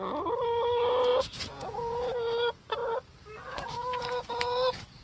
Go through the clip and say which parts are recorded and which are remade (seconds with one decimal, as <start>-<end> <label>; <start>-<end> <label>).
0.0-1.1 recorded; 1.1-2.0 remade; 2.0-5.0 recorded